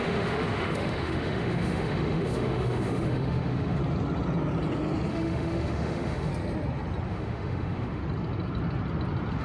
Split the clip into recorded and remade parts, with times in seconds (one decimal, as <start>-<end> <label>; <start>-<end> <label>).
0.0-3.8 remade; 3.8-5.1 recorded; 5.1-6.3 remade; 6.3-7.1 recorded; 7.1-8.0 remade; 8.0-9.4 recorded